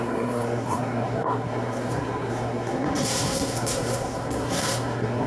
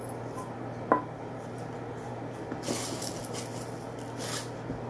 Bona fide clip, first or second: second